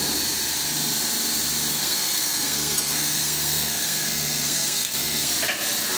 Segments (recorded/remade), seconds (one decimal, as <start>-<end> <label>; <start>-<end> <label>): 0.0-1.7 recorded; 1.7-5.3 remade; 5.3-6.0 recorded